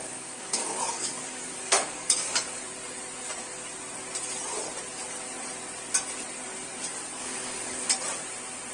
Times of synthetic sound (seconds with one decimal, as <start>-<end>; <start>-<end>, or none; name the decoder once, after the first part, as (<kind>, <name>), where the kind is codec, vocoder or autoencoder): 0.0-2.6 (codec, DAC); 7.2-7.9